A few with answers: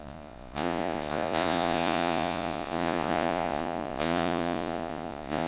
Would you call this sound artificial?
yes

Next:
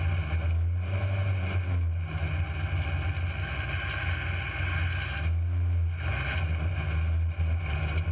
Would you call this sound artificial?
no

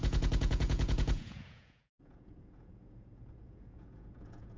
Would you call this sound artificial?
yes